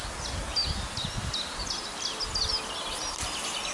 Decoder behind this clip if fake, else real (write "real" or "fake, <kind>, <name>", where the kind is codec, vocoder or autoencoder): real